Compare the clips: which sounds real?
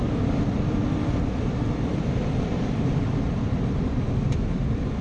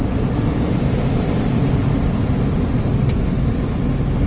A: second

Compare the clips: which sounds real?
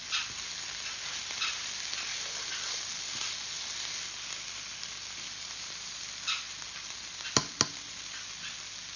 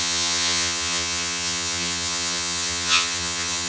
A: first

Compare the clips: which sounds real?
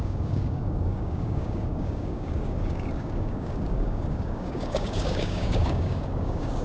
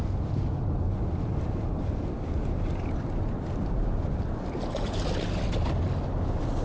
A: second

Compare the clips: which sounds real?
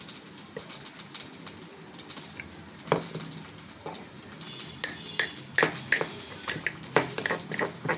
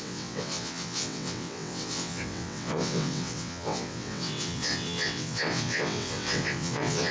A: first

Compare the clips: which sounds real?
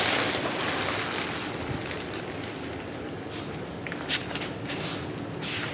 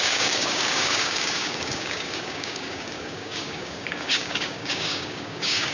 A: first